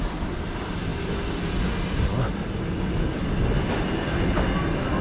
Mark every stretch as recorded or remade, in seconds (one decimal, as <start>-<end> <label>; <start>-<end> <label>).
0.0-5.0 recorded